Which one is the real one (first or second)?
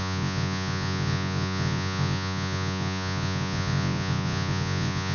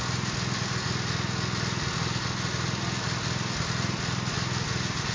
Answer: second